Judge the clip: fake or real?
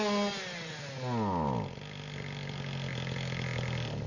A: real